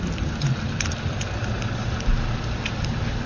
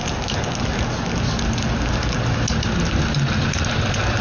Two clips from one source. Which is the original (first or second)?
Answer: second